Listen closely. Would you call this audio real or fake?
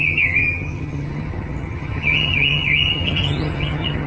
fake